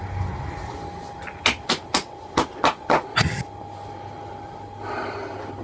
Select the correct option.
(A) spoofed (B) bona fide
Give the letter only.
B